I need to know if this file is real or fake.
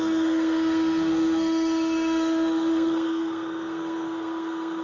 fake